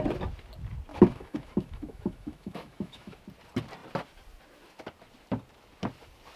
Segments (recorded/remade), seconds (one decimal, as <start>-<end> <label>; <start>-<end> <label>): 0.0-0.9 recorded; 0.9-3.2 remade; 3.2-6.4 recorded